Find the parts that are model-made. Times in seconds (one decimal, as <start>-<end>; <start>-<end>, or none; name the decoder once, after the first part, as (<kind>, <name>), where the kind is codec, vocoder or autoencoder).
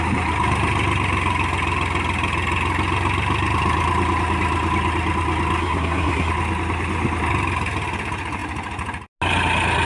5.6-6.3 (codec, SNAC)